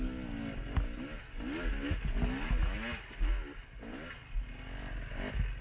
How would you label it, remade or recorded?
recorded